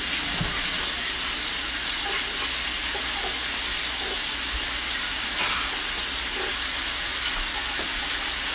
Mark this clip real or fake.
real